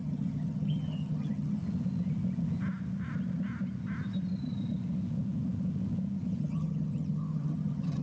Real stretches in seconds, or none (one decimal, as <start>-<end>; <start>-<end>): 1.6-6.4